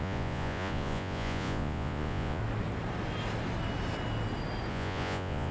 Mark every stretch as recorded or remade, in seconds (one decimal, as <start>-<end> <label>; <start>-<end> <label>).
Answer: 0.0-2.4 remade; 2.4-4.7 recorded; 4.7-5.5 remade